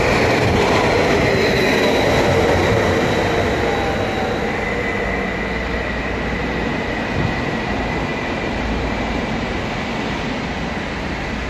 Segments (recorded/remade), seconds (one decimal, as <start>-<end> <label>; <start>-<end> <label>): 0.0-8.1 recorded; 8.1-9.6 remade; 9.6-11.5 recorded